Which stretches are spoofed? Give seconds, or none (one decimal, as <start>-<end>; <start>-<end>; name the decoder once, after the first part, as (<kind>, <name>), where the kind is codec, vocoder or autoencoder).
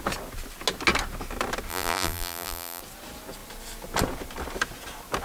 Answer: 1.7-2.8 (vocoder, BigVGAN v2)